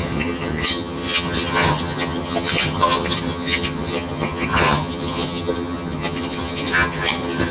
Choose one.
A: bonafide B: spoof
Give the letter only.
B